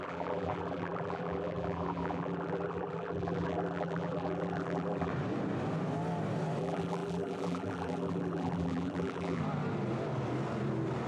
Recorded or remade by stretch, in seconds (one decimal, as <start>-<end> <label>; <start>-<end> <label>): 0.0-5.1 remade; 5.1-6.6 recorded; 6.6-9.4 remade; 9.4-11.1 recorded